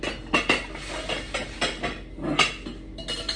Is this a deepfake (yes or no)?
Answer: no